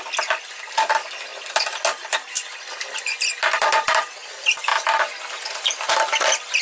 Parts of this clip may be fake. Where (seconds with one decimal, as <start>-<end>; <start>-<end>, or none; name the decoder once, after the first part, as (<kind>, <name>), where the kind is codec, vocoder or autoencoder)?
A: none